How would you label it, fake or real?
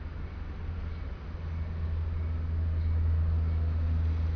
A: real